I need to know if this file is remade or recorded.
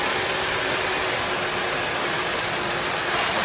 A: recorded